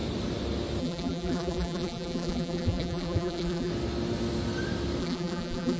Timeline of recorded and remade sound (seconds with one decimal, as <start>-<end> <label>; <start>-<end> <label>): 0.0-0.8 recorded; 0.8-3.7 remade; 3.7-5.0 recorded; 5.0-5.8 remade